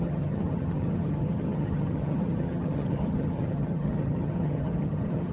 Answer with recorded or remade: remade